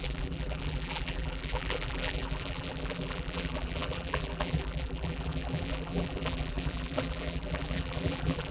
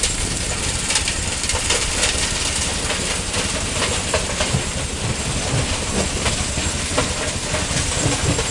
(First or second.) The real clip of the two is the second